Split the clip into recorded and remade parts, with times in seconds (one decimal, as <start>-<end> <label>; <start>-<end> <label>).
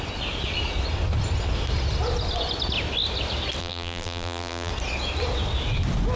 0.0-3.6 recorded; 3.6-4.7 remade; 4.7-6.2 recorded